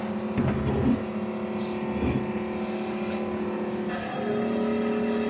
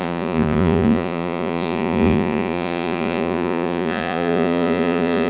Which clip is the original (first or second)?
first